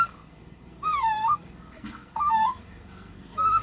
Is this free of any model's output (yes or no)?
no